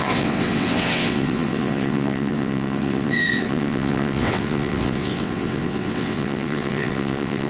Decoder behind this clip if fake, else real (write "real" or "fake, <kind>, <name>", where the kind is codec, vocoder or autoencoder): fake, vocoder, WaveNeXt